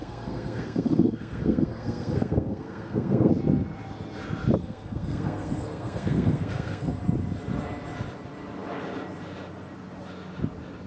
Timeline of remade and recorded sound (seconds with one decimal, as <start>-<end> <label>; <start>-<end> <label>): 0.0-3.3 remade; 3.3-4.6 recorded; 4.6-6.9 remade; 6.9-10.9 recorded